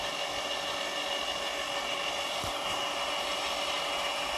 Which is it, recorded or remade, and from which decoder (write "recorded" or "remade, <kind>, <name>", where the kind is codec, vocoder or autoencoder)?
recorded